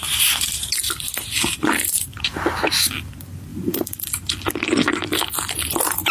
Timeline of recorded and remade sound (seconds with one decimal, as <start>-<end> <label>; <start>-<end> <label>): 0.0-3.1 remade; 3.1-3.5 recorded; 3.5-4.5 remade; 4.5-6.1 recorded